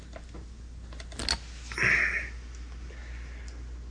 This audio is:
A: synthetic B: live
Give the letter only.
B